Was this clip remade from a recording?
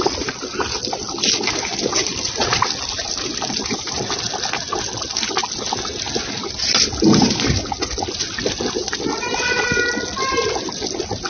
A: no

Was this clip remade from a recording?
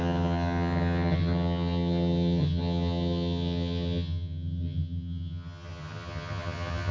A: yes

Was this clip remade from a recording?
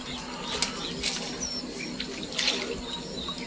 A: no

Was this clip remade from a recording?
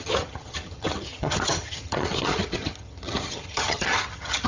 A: yes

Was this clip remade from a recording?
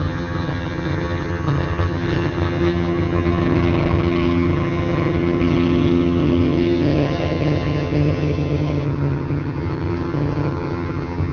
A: yes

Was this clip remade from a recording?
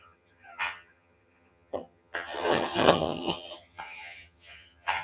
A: yes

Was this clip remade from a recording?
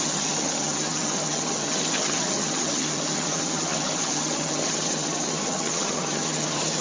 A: yes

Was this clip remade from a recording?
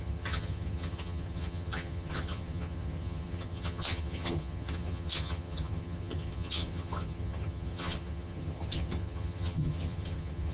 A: yes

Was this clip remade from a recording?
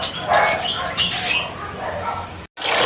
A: no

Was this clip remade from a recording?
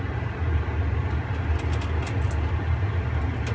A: no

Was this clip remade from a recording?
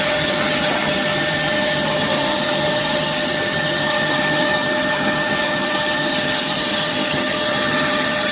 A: yes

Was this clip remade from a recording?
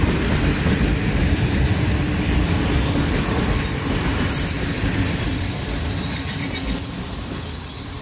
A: no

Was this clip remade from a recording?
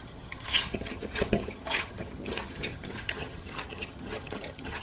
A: yes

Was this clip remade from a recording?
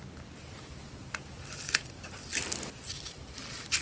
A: no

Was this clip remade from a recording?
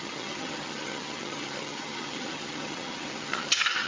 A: yes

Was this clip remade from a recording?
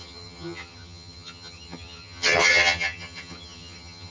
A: yes